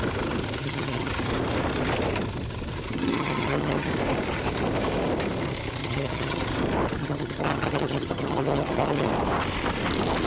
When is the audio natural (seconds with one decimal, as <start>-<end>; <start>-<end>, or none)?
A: 0.0-0.6; 1.1-2.9; 3.9-5.8; 6.4-7.0; 9.1-10.3